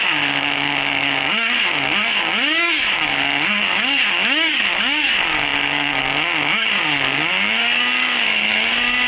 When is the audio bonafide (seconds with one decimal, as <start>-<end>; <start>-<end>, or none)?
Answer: none